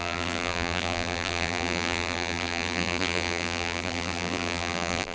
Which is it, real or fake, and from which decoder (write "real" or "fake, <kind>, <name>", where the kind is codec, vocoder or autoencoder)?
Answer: fake, vocoder, BigVGAN v2